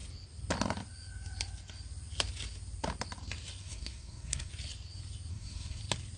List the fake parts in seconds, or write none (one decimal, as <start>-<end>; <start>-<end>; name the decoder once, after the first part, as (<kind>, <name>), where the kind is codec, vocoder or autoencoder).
3.6-4.5 (codec, SNAC); 5.3-5.8